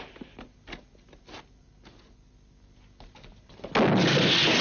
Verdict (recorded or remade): recorded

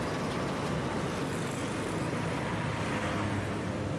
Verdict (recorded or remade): recorded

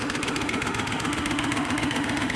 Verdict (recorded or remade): remade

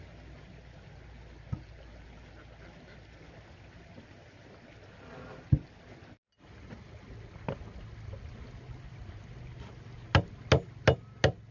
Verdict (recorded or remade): recorded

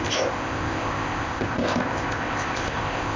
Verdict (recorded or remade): remade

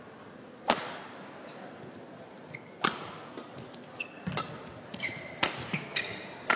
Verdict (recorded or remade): recorded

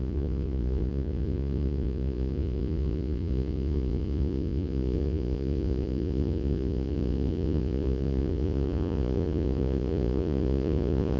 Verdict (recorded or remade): remade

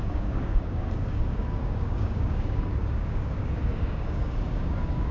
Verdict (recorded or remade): remade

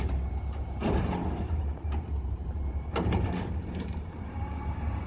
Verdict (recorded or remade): remade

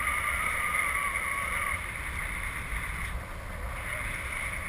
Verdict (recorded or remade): recorded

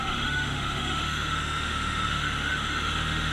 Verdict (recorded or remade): remade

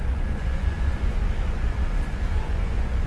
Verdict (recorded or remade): remade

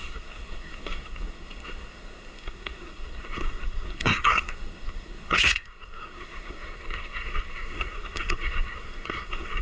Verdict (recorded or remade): remade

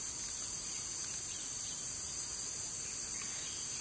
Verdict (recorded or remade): recorded